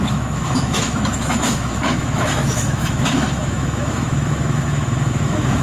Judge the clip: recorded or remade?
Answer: remade